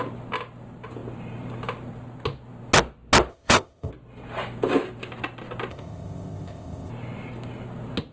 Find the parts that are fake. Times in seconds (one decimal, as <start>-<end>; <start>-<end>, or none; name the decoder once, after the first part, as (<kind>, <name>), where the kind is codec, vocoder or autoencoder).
3.3-3.9 (codec, ZipCodec); 5.7-6.9